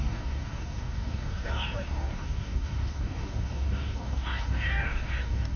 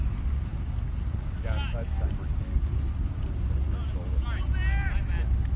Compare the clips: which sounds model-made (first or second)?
first